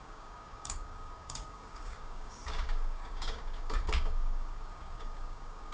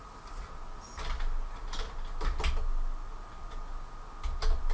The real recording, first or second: second